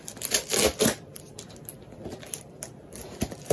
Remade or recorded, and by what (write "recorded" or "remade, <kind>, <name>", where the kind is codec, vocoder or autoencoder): recorded